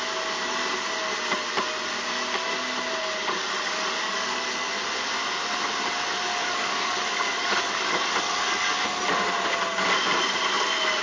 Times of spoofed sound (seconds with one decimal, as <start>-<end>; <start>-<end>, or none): 3.2-4.7; 6.4-8.8